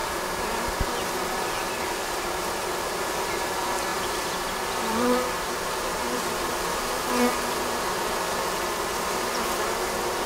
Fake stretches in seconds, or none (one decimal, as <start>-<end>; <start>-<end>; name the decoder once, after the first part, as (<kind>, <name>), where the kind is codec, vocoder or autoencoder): 0.0-1.4 (vocoder, BigVGAN v2); 2.0-3.1; 3.9-6.5